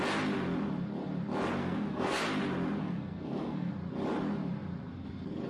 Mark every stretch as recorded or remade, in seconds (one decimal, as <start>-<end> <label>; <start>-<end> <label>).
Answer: 0.0-1.6 recorded; 1.6-2.2 remade; 2.2-2.8 recorded; 2.8-3.7 remade; 3.7-5.5 recorded